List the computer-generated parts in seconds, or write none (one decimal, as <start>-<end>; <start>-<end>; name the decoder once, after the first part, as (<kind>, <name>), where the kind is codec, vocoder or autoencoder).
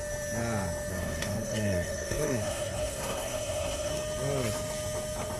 0.9-3.9 (codec, SNAC)